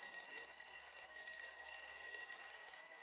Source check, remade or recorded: remade